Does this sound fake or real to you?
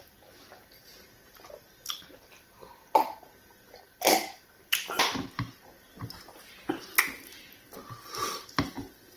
real